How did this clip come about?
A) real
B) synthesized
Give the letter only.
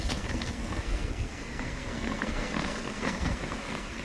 B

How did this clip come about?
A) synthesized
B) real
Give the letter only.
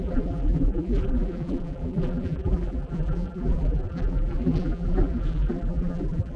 A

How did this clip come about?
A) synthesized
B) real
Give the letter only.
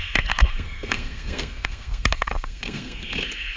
A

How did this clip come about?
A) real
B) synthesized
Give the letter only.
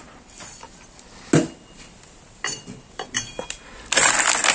A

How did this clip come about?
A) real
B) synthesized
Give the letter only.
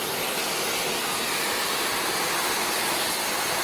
A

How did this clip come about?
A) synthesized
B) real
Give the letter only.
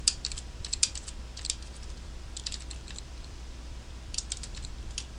A